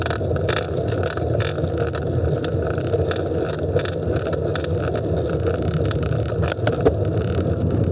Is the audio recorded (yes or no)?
yes